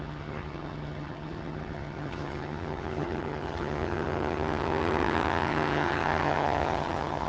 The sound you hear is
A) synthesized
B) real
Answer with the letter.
A